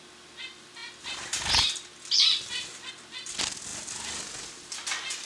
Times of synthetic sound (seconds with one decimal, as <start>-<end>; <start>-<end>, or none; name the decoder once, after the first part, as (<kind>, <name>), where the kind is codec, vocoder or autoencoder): none